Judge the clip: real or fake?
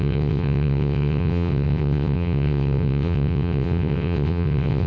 fake